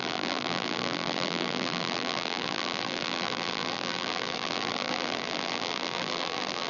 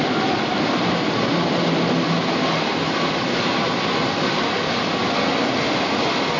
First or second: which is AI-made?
first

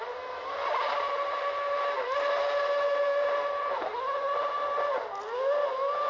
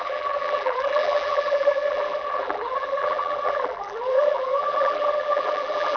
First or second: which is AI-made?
second